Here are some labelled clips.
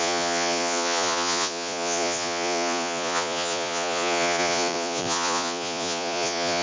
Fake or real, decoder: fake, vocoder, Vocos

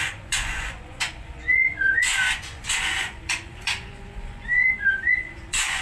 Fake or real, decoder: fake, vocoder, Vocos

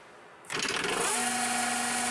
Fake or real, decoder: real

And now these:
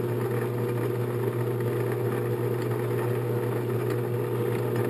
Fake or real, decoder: real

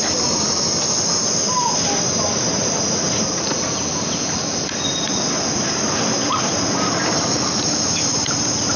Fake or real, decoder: real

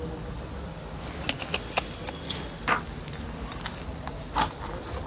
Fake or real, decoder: real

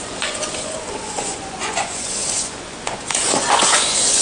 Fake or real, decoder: fake, vocoder, Vocos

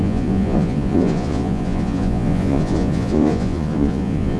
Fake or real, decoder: fake, vocoder, Vocos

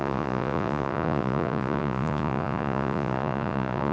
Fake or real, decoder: fake, vocoder, Vocos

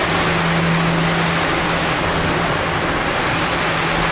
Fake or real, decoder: real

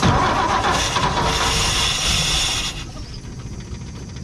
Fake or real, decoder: real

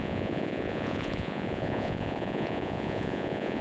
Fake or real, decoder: fake, vocoder, Vocos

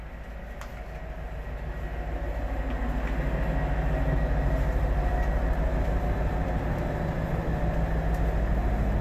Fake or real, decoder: real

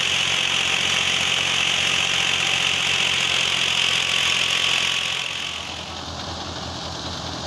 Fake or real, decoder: real